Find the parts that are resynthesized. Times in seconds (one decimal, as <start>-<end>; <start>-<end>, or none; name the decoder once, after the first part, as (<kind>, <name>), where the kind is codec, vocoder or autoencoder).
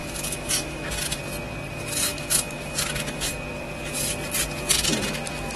0.0-1.2 (autoencoder, DAC-VAE); 2.1-3.3